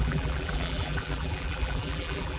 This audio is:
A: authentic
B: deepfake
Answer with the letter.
B